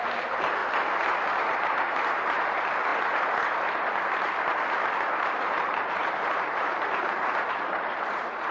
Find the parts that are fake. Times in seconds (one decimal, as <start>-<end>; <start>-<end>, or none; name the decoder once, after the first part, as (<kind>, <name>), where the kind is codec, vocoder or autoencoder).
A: 0.0-0.6 (vocoder, BigVGAN v2); 1.5-2.9; 5.5-8.5